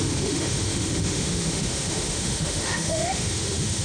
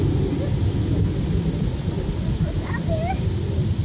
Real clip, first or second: second